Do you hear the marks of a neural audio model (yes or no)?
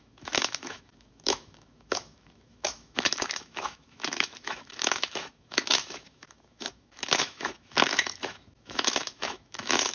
yes